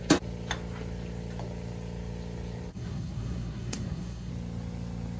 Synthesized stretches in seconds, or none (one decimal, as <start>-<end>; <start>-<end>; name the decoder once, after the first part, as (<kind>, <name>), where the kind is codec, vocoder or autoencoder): 2.7-4.3 (codec, SNAC)